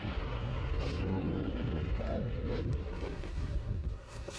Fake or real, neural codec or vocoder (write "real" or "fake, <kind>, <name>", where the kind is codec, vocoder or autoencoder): fake, codec, SNAC